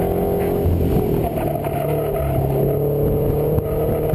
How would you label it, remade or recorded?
recorded